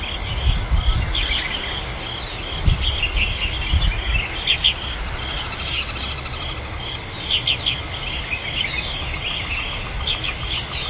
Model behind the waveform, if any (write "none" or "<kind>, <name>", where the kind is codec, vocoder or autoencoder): none